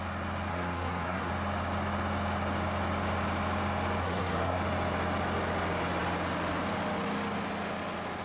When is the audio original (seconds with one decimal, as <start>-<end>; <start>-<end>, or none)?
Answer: 0.0-0.5; 1.3-4.0; 4.6-8.2